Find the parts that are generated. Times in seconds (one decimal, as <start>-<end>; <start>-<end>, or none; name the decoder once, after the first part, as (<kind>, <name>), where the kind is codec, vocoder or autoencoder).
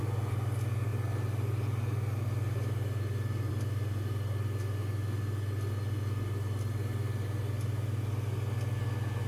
none